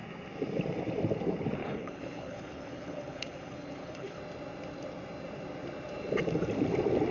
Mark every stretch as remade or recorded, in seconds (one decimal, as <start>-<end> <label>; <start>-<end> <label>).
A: 0.0-1.6 recorded; 1.6-4.2 remade; 4.2-7.1 recorded